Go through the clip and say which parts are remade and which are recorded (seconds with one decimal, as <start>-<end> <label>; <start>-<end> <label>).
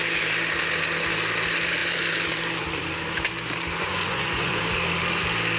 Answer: 0.0-3.8 recorded; 3.8-4.6 remade; 4.6-5.6 recorded